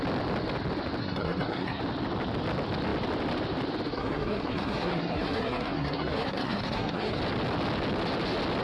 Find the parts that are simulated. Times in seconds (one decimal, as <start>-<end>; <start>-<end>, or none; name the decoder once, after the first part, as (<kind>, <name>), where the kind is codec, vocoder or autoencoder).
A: 1.0-1.8 (codec, SNAC); 3.9-7.2